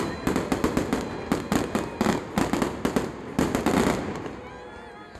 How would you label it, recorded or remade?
recorded